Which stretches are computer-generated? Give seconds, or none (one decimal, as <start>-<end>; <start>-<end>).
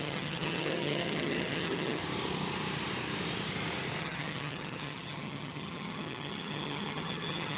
0.0-2.0; 4.0-7.6